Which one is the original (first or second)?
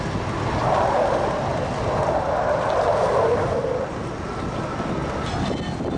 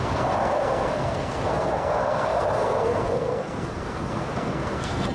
first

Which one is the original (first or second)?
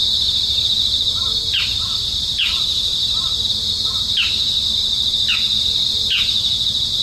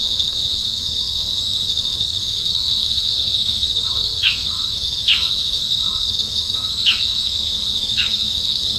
first